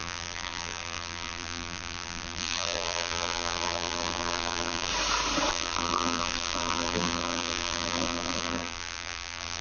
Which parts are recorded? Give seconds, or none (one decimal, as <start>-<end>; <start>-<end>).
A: 4.9-5.5